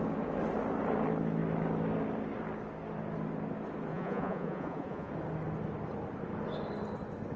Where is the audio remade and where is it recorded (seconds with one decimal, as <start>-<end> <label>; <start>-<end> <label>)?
0.0-3.9 recorded; 3.9-5.1 remade; 5.1-7.4 recorded